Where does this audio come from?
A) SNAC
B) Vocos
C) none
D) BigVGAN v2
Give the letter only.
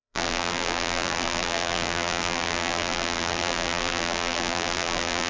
D